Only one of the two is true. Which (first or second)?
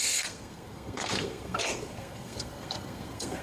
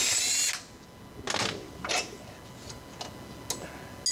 second